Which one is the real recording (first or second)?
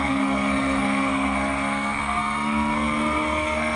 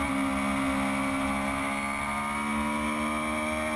second